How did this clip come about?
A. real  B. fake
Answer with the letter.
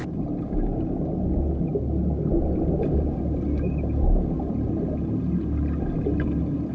A